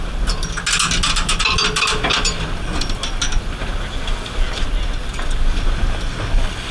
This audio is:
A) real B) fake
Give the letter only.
A